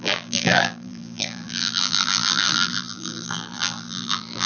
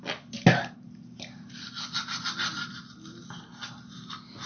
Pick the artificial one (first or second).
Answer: first